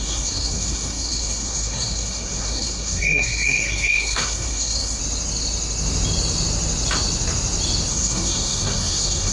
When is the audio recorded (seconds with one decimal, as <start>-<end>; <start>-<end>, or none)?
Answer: 5.0-7.9